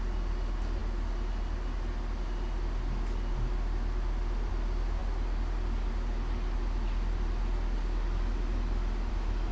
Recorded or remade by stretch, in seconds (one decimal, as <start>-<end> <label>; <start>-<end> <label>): 0.0-9.5 recorded